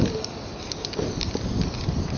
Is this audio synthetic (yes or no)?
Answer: no